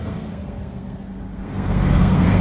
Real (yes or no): no